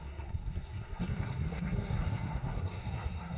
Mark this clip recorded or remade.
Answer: remade